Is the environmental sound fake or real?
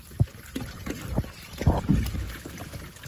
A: real